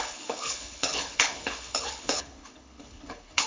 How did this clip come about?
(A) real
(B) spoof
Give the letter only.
B